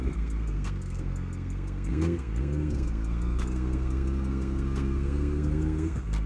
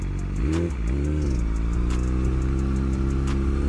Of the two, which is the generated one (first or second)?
first